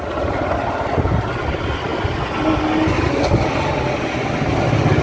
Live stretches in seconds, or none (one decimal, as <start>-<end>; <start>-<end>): 0.0-5.0